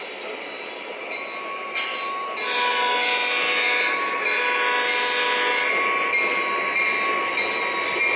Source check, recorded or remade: recorded